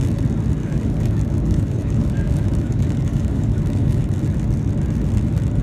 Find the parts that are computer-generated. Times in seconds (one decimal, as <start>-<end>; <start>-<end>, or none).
0.6-4.0